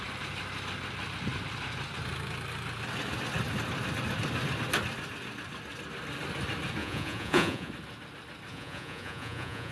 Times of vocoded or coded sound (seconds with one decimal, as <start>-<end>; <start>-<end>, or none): 6.8-7.7; 8.5-9.7

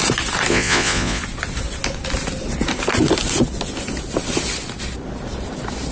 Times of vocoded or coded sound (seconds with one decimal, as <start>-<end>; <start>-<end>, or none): 0.5-1.2

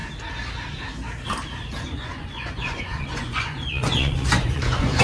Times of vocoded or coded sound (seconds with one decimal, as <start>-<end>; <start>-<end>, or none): 1.8-5.0

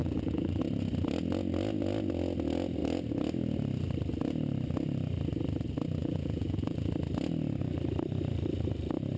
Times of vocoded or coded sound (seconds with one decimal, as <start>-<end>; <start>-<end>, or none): 0.0-0.6; 6.0-6.9

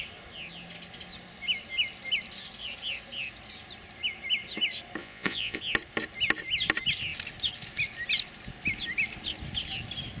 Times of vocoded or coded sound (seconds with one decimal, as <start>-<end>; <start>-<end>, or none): 5.0-5.6

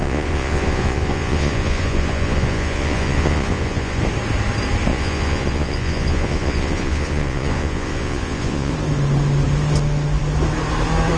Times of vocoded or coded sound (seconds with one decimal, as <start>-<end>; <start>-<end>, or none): 0.0-4.0; 4.9-8.7

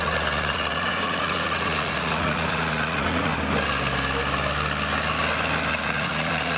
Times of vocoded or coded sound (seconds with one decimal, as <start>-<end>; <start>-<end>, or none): 0.0-3.3; 5.7-6.6